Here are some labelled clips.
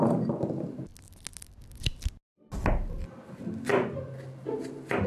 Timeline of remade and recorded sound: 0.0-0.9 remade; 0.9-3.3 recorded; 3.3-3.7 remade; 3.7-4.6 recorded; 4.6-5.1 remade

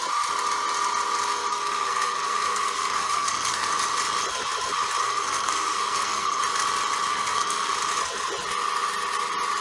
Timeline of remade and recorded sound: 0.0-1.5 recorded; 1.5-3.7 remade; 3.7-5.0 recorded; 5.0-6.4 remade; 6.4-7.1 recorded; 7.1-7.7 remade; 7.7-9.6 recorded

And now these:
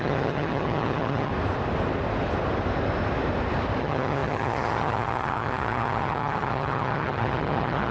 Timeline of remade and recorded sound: 0.0-1.3 remade; 1.3-3.8 recorded; 3.8-7.9 remade

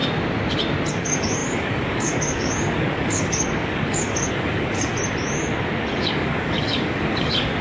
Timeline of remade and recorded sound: 0.0-0.9 recorded; 0.9-4.9 remade; 4.9-6.0 recorded; 6.0-7.6 remade

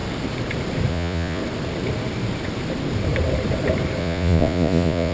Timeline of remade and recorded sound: 0.0-0.9 recorded; 0.9-1.4 remade; 1.4-4.0 recorded; 4.0-5.1 remade